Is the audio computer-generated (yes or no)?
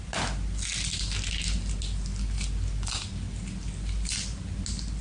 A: no